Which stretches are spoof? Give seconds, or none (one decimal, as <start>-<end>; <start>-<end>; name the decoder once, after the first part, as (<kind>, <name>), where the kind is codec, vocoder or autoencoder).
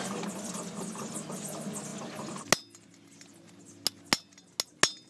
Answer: none